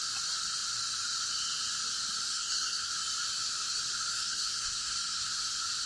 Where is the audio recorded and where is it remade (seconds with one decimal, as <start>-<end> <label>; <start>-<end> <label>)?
0.0-2.3 recorded; 2.3-2.9 remade; 2.9-4.1 recorded; 4.1-5.3 remade; 5.3-5.9 recorded